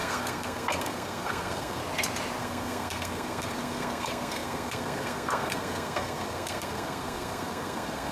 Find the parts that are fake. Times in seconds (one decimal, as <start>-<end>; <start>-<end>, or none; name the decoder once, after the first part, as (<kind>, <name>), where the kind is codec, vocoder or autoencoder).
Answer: 0.0-1.8 (codec, SNAC); 2.4-8.1